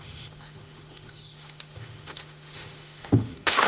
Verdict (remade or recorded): remade